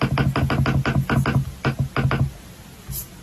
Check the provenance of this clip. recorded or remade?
recorded